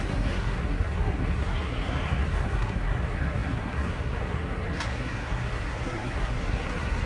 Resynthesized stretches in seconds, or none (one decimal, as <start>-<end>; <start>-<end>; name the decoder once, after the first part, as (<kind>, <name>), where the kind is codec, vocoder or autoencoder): 0.0-7.1 (codec, SNAC)